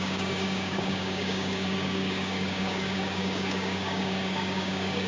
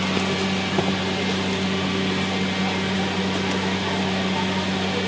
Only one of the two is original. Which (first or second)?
second